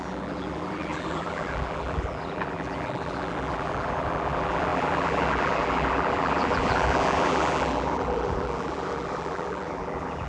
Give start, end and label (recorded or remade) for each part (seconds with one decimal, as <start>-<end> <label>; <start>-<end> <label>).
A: 0.0-10.3 remade